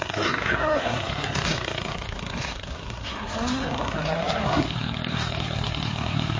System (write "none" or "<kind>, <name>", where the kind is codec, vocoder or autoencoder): codec, SNAC